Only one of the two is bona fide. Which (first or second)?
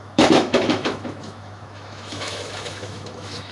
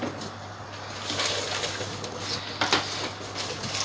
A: second